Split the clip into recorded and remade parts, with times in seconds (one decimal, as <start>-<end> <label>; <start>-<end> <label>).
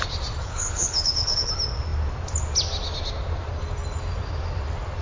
0.0-0.4 recorded; 0.4-1.5 remade; 1.5-5.0 recorded